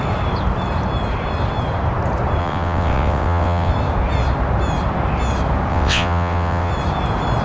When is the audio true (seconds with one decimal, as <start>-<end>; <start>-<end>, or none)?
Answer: 0.0-2.4; 3.7-5.7; 6.7-7.4